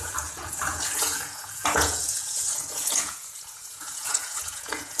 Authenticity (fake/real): fake